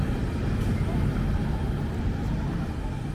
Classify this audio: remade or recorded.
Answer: recorded